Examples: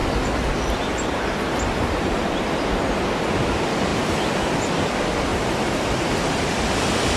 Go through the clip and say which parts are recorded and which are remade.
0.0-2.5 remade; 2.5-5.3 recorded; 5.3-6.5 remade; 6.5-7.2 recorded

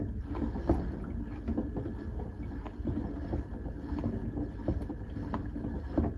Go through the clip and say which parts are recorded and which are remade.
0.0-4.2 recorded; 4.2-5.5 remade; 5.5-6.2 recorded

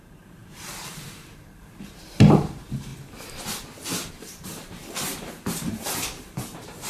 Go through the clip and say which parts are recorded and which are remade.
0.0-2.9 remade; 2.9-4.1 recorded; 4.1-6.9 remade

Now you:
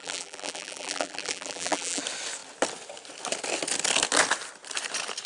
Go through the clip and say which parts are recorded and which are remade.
0.0-2.0 remade; 2.0-5.3 recorded

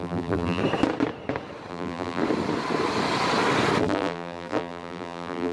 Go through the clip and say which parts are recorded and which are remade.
0.0-0.6 remade; 0.6-1.7 recorded; 1.7-2.2 remade; 2.2-3.8 recorded; 3.8-5.5 remade

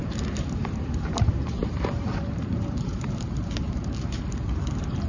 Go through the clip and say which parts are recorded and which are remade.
0.0-5.1 remade